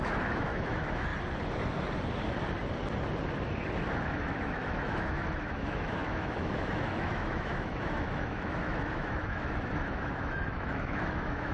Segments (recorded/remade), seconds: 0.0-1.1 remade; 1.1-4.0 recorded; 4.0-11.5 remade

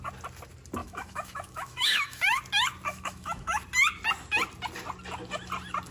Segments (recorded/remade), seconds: 0.0-0.8 recorded; 0.8-2.4 remade; 2.4-2.9 recorded; 2.9-3.6 remade; 3.6-5.9 recorded

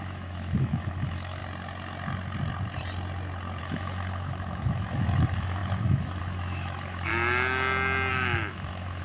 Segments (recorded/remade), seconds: 0.0-1.4 remade; 1.4-3.6 recorded; 3.6-7.1 remade; 7.1-8.1 recorded; 8.1-9.0 remade

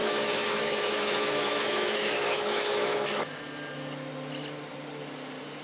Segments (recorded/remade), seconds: 0.0-3.4 remade; 3.4-5.6 recorded